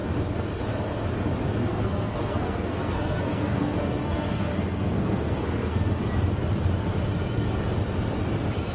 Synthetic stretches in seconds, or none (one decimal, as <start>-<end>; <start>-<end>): 1.6-5.9